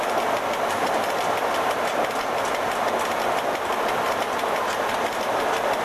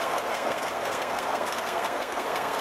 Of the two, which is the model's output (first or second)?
second